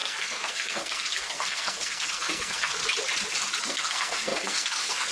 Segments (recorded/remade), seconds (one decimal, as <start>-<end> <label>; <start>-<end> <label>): 0.0-2.8 remade; 2.8-3.6 recorded; 3.6-5.1 remade